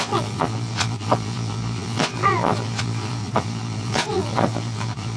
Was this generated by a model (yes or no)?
yes